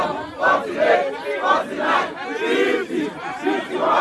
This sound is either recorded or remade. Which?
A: remade